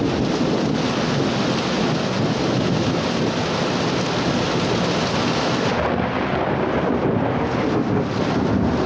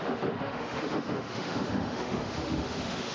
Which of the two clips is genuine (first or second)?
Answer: first